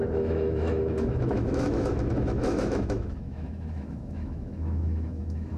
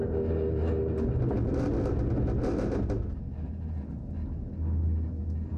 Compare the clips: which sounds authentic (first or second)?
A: second